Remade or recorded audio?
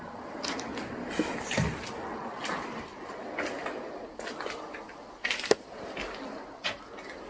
recorded